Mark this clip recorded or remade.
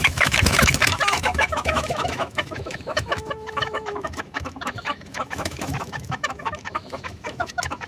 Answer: remade